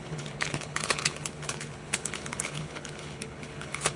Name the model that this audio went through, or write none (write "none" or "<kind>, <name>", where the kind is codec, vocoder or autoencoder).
codec, HILCodec